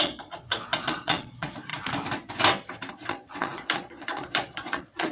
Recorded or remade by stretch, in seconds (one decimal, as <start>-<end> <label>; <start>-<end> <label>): 0.0-1.7 remade; 1.7-2.9 recorded; 2.9-5.1 remade